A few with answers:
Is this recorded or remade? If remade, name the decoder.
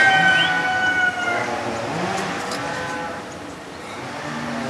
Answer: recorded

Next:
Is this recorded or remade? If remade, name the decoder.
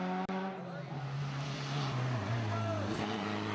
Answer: recorded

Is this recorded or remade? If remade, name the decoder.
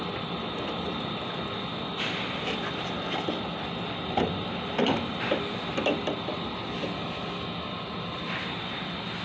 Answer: recorded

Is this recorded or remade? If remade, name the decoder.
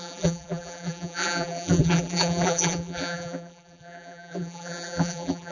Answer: remade, vocoder, BigVGAN v2